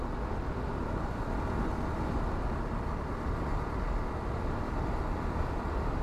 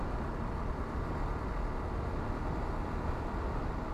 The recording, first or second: second